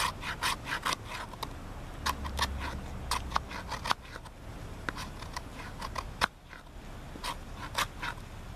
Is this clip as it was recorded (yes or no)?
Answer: yes